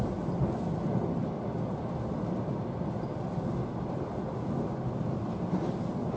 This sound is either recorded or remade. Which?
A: recorded